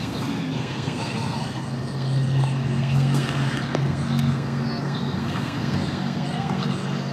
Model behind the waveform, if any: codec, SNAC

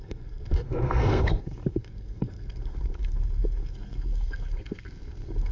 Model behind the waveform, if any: codec, SNAC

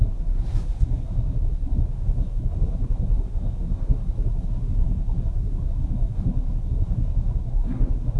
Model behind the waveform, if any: codec, SNAC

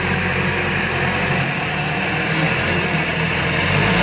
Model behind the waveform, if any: none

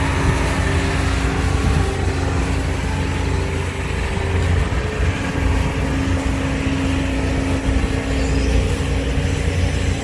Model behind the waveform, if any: none